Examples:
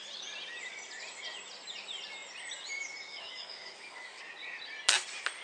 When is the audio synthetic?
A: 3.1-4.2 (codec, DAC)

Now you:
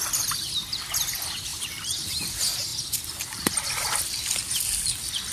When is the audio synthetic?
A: 1.5-2.1 (vocoder, BigVGAN v2); 2.7-3.4